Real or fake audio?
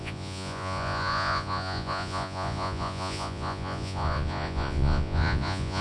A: fake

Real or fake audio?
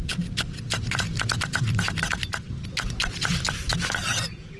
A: real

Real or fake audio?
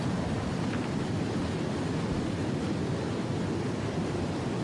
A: real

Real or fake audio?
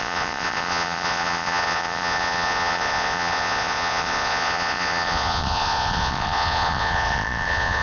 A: fake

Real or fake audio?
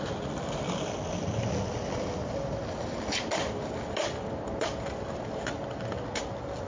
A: real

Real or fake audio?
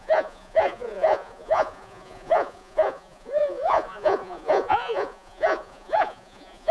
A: fake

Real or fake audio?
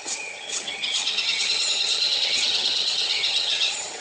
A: fake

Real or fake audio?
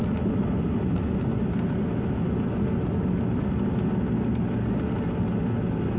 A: real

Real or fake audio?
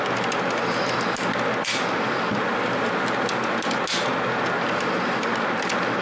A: real